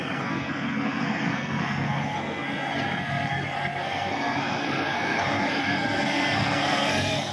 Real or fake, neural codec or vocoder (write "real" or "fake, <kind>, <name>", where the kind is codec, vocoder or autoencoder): fake, codec, SNAC